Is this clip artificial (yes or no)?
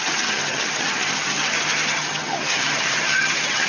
yes